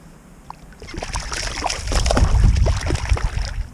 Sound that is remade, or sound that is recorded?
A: recorded